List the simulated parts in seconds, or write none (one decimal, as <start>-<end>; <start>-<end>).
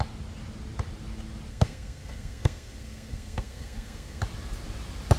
1.5-4.2